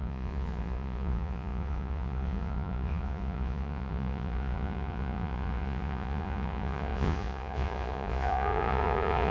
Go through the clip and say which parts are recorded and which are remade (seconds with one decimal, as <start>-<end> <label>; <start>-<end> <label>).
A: 0.0-9.3 remade